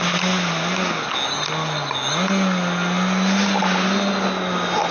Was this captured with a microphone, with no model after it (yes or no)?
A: yes